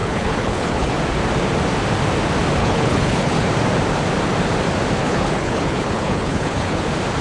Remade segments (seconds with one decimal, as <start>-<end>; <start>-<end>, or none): 0.0-0.9; 2.6-3.5; 5.0-6.8